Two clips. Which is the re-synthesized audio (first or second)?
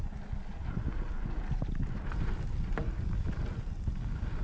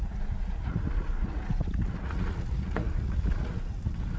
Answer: second